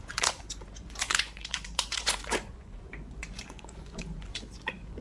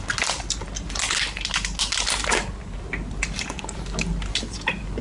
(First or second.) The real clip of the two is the second